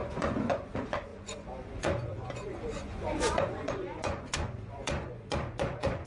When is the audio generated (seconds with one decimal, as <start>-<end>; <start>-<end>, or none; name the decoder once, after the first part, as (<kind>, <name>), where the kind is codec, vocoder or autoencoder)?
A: 0.0-6.1 (vocoder, Vocos)